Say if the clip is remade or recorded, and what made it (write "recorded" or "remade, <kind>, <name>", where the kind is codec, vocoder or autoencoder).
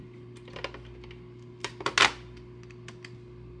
recorded